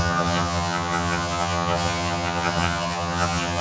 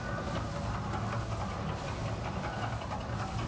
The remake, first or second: first